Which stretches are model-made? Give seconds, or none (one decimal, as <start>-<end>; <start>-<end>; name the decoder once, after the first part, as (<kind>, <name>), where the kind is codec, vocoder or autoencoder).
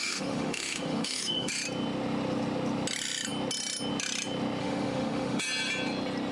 0.0-1.5 (autoencoder, DAC-VAE); 4.6-5.4